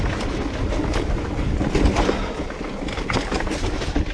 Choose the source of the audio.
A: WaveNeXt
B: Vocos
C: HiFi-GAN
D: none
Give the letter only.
D